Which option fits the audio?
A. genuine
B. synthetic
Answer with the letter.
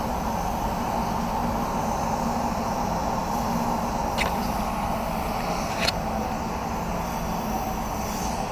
A